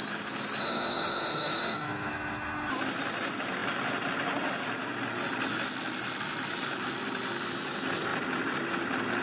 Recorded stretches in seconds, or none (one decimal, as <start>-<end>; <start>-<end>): 0.0-0.6; 2.7-9.2